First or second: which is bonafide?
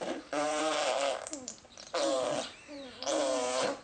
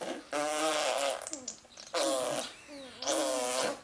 second